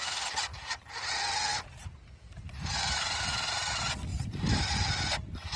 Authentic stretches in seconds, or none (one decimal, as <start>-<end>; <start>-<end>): 0.0-0.5; 1.1-1.5; 3.2-4.1